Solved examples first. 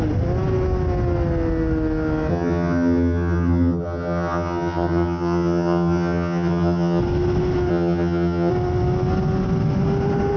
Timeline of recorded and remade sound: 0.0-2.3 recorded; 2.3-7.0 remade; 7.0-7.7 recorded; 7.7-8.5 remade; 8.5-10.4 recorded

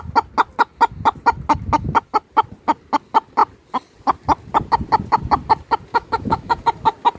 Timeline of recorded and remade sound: 0.0-5.9 recorded; 5.9-6.6 remade; 6.6-7.2 recorded

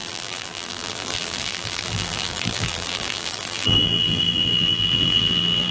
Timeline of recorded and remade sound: 0.0-5.7 remade

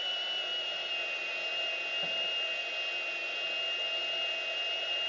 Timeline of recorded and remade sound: 0.0-5.1 recorded

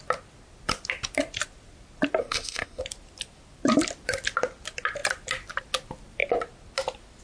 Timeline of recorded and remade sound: 0.0-2.2 recorded; 2.2-2.8 remade; 2.8-7.2 recorded